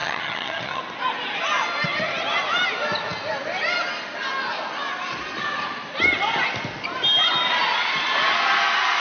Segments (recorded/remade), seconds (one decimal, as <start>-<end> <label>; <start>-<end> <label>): 0.0-0.8 remade; 0.8-9.0 recorded